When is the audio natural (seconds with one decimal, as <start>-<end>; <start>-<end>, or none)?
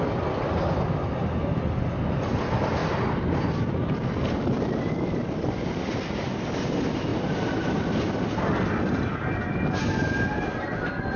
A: 0.0-7.1; 7.7-11.2